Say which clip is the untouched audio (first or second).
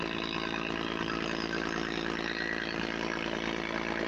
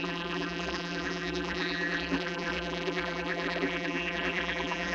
first